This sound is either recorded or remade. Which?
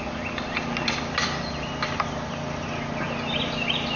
recorded